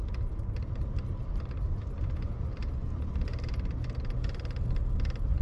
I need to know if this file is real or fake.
real